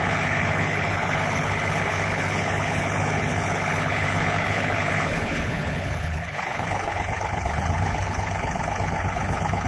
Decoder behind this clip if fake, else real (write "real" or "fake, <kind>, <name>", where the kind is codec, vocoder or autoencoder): fake, codec, HILCodec